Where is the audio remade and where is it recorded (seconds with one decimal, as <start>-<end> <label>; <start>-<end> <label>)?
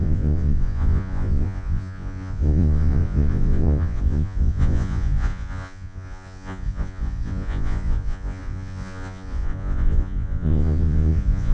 0.0-11.5 remade